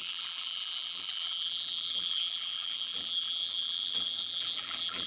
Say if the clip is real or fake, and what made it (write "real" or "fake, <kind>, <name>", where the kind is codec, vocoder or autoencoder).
fake, vocoder, BigVGAN v2